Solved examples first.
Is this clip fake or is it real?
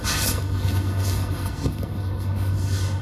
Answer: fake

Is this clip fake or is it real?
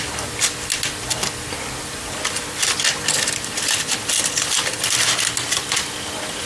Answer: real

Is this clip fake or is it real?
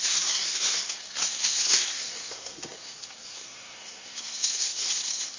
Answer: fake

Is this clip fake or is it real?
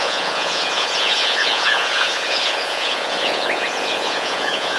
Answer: fake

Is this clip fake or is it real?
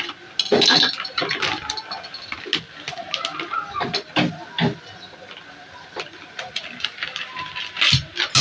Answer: real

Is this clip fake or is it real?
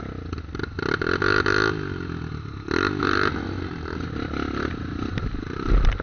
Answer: real